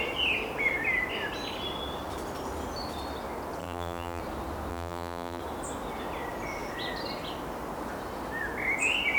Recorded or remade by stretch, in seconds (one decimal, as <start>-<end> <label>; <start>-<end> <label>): 0.0-3.6 recorded; 3.6-4.2 remade; 4.2-4.7 recorded; 4.7-5.4 remade; 5.4-9.2 recorded